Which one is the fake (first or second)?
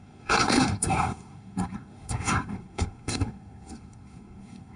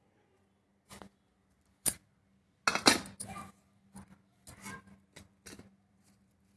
first